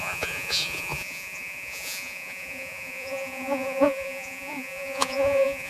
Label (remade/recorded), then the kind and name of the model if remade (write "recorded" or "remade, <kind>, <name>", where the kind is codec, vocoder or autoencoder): remade, vocoder, Vocos